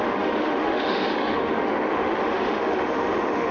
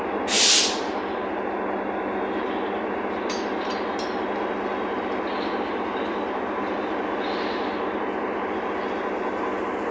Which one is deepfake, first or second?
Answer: first